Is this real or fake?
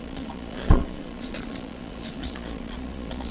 fake